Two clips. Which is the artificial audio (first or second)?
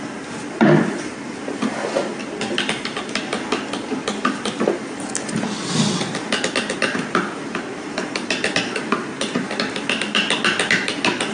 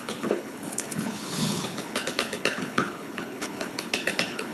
second